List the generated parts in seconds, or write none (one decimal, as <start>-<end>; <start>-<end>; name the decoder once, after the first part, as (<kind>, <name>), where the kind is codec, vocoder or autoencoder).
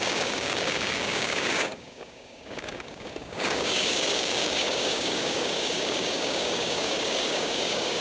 0.0-8.0 (codec, DAC)